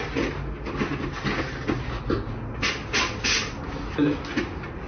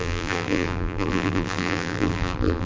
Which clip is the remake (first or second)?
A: second